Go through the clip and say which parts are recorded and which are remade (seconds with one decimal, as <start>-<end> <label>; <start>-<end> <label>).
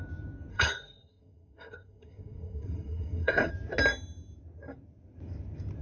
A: 0.0-0.5 recorded; 0.5-3.5 remade; 3.5-5.8 recorded